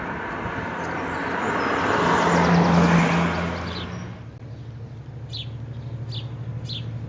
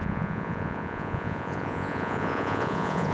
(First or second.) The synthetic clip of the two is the second